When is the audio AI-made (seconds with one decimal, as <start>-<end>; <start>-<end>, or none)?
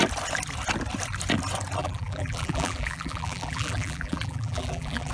1.8-5.1